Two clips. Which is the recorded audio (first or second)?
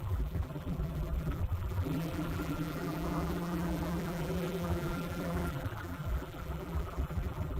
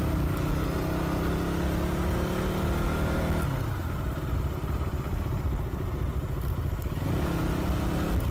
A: second